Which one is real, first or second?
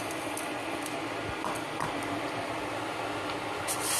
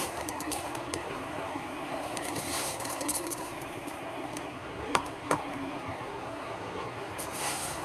first